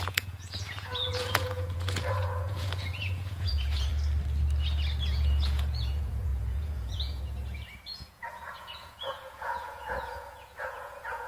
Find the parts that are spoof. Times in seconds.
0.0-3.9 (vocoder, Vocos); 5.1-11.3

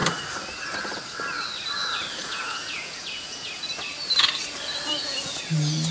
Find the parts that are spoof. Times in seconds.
2.2-3.5 (vocoder, Vocos); 4.9-5.5

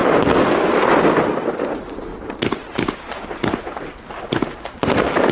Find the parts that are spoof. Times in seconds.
none

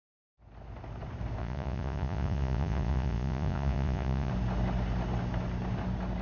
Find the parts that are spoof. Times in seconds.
1.4-4.3 (vocoder, Vocos)

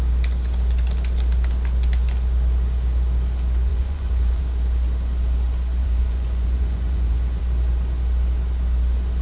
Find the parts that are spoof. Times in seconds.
3.7-4.4 (vocoder, Vocos); 5.8-7.4

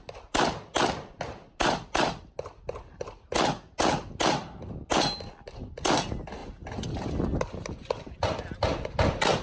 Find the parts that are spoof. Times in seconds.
none

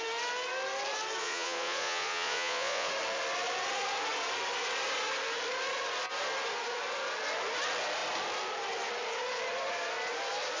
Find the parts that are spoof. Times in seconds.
1.2-2.9 (vocoder, Vocos)